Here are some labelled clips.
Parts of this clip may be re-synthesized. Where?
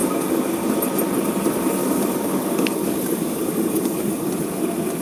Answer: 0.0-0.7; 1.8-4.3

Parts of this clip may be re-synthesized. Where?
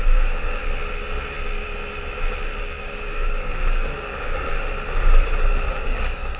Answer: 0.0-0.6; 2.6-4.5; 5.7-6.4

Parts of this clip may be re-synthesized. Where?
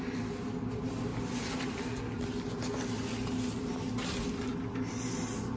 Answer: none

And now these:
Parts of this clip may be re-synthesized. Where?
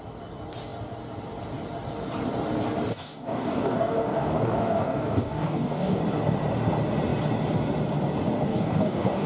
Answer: 2.9-6.0; 8.5-9.3